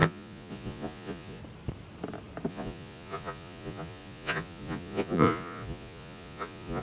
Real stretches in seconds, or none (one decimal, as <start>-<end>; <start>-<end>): 1.4-2.5